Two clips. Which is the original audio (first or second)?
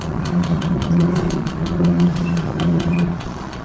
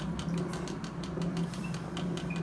second